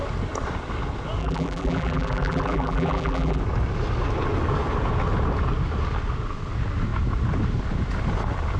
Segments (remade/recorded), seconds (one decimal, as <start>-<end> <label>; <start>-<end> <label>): 0.0-1.2 recorded; 1.2-3.4 remade; 3.4-8.6 recorded